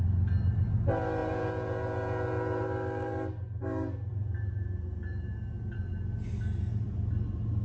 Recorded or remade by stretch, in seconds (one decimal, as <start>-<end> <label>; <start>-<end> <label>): 0.0-1.2 recorded; 1.2-2.6 remade; 2.6-4.1 recorded; 4.1-5.8 remade; 5.8-7.6 recorded